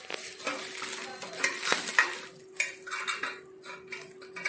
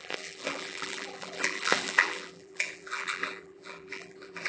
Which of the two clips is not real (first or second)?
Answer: second